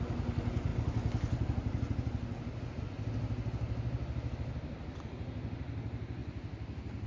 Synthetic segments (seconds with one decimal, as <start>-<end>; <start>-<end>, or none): none